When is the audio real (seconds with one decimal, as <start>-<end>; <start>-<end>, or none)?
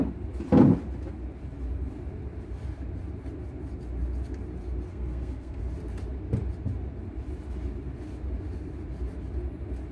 0.0-4.9; 5.6-9.9